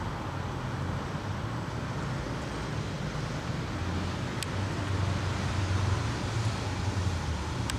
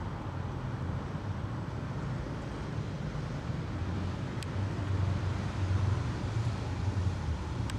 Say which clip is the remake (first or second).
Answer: second